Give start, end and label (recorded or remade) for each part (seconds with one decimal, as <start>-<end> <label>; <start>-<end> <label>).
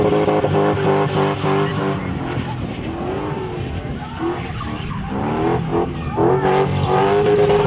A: 0.0-7.7 recorded